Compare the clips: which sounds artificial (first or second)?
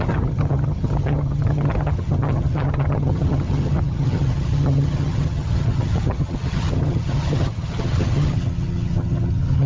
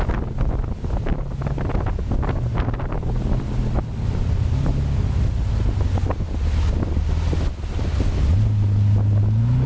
first